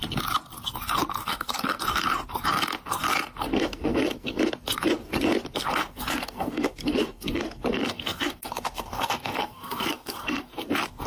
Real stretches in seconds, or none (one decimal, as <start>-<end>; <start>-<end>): 0.0-1.2; 1.8-3.5; 4.4-5.6; 10.5-11.1